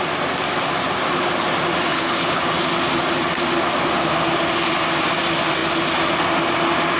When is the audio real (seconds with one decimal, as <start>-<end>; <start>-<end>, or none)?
0.0-1.9; 2.4-7.0